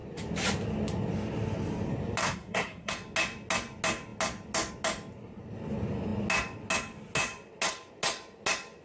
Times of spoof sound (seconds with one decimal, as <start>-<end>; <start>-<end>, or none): 2.2-2.9